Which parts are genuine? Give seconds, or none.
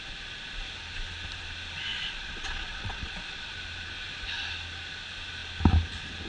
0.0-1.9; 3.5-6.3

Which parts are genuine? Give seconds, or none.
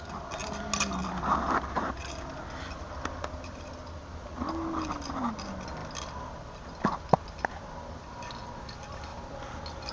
0.0-9.9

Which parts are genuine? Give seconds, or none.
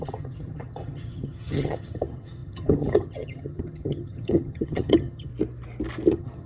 5.3-6.1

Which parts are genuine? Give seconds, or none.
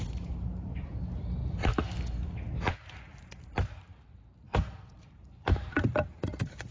1.4-3.0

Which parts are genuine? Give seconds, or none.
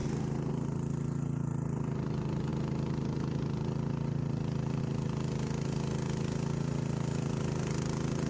0.0-8.3